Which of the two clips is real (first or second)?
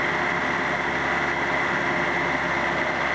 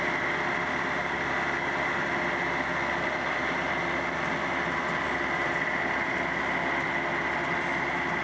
first